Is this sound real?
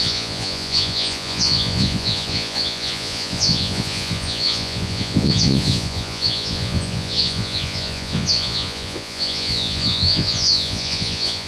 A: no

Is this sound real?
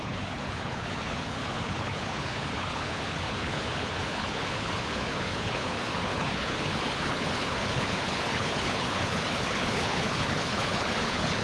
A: no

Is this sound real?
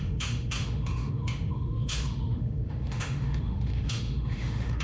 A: no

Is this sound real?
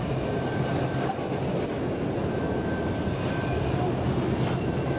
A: yes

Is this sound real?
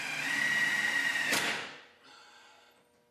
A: yes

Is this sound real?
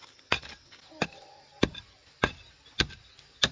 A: yes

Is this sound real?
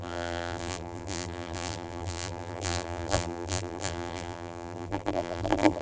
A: no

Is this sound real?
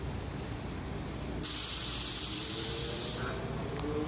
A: yes